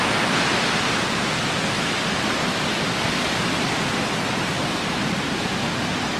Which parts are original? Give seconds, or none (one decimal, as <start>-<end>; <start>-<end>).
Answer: 0.0-4.5; 5.5-6.2